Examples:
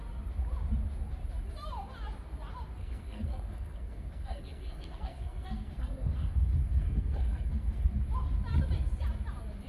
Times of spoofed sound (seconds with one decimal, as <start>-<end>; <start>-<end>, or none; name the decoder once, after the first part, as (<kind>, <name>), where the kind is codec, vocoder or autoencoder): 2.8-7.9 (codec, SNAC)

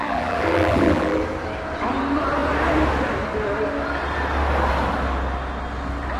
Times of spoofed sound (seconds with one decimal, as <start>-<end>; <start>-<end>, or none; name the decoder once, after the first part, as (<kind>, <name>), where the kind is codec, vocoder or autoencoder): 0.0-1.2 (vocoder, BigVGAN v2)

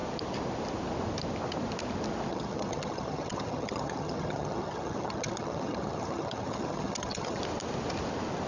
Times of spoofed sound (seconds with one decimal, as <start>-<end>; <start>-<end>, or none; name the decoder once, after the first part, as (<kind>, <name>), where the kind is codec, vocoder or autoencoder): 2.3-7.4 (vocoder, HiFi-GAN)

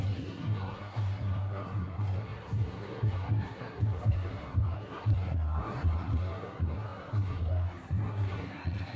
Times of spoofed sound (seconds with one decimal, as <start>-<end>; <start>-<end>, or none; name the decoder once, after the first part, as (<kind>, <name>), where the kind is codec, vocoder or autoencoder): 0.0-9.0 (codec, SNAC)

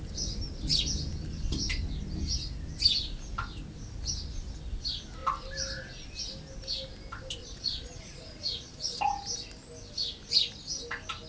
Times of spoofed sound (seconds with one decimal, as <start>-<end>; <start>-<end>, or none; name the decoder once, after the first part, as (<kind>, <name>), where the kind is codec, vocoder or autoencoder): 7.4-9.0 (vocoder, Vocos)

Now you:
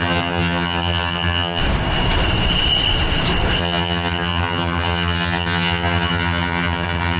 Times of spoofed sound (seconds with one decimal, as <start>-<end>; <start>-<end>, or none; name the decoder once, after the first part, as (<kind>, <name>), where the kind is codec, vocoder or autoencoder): 0.0-1.6 (vocoder, HiFi-GAN); 3.6-7.2

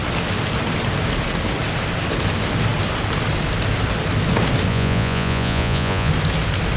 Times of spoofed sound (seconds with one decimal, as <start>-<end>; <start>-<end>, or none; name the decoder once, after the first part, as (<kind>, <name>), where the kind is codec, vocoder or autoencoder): 4.7-6.1 (vocoder, Vocos)

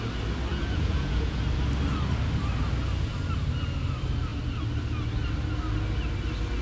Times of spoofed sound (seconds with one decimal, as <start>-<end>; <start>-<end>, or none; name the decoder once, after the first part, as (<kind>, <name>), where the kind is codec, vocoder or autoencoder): 0.5-1.4 (vocoder, Vocos)